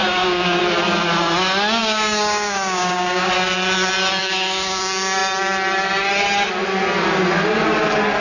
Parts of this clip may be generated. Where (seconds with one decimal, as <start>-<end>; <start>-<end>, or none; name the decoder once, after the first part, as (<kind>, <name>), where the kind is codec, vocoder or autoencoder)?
0.0-0.6 (codec, DAC); 1.8-3.3; 4.2-4.8